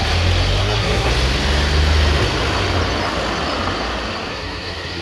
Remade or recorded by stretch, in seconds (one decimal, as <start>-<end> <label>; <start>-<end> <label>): 0.0-0.6 recorded; 0.6-1.1 remade; 1.1-4.3 recorded; 4.3-5.0 remade